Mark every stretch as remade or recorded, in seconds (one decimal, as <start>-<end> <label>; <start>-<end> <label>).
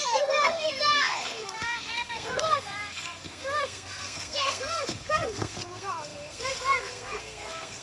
0.0-7.8 remade